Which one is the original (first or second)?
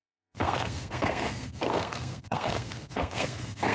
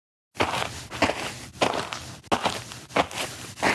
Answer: second